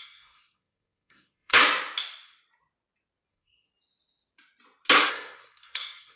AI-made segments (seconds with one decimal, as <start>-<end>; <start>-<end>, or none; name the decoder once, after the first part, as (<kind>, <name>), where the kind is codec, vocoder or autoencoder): 0.0-1.6 (codec, SNAC); 3.3-3.7; 5.1-6.2